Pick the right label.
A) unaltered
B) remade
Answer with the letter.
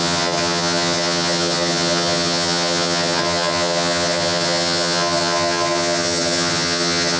B